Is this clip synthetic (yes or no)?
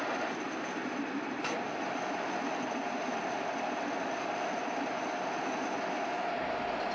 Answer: no